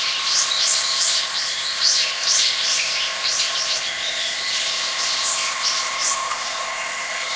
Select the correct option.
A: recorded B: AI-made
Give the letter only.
B